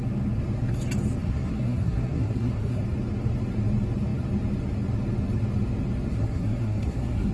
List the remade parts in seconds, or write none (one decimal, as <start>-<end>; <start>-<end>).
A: 1.2-2.8; 6.1-7.3